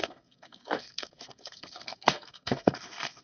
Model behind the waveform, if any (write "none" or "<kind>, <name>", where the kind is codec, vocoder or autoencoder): codec, SNAC